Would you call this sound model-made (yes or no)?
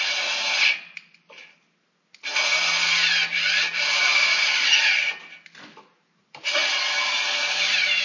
no